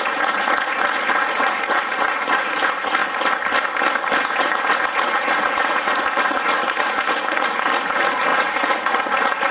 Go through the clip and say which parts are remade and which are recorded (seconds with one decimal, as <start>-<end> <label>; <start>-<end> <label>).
0.0-3.0 remade; 3.0-4.2 recorded; 4.2-9.5 remade